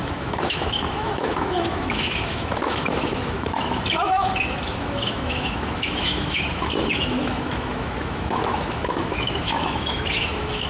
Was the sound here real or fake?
fake